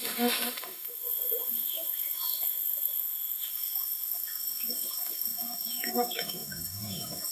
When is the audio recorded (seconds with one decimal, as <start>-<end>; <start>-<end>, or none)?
none